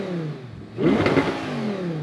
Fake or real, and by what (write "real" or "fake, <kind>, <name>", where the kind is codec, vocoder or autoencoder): real